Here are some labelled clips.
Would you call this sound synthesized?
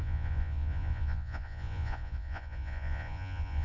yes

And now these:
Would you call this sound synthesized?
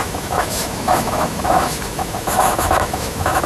yes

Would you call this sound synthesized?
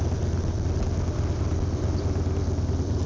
no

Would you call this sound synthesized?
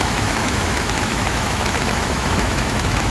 yes